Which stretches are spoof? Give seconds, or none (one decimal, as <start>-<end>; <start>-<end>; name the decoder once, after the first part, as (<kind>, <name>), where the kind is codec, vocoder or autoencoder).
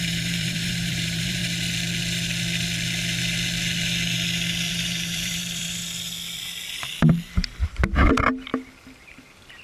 0.0-1.4 (vocoder, BigVGAN v2); 4.7-5.8; 7.1-8.5; 9.2-9.6